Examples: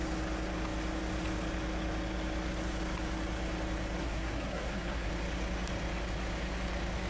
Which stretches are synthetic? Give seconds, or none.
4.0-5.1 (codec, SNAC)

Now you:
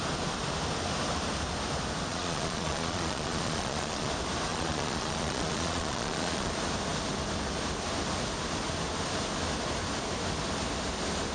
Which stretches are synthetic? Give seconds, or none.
2.1-4.1 (vocoder, Vocos); 4.5-6.5

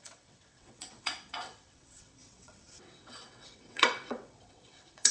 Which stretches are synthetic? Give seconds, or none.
0.0-5.1 (vocoder, WaveNeXt)

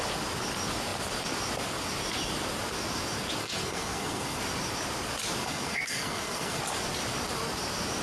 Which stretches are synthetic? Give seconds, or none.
3.4-4.4 (codec, SNAC); 5.4-6.6

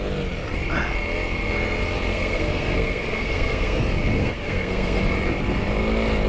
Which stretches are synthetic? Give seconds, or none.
2.1-3.8 (codec, SNAC); 4.2-5.0